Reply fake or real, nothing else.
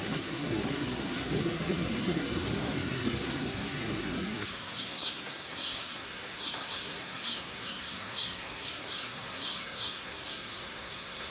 fake